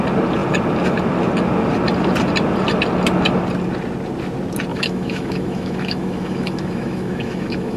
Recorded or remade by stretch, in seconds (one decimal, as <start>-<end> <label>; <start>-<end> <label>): 0.0-4.7 recorded; 4.7-7.8 remade